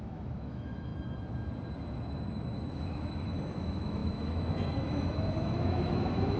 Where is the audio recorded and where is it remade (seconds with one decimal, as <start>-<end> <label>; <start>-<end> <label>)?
0.0-0.9 remade; 0.9-2.3 recorded; 2.3-6.4 remade